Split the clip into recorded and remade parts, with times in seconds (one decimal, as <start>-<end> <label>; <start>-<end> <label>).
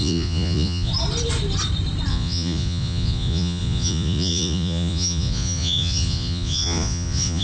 0.0-0.9 remade; 0.9-2.1 recorded; 2.1-7.4 remade